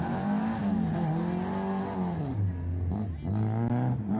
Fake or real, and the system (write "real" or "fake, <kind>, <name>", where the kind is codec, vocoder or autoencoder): real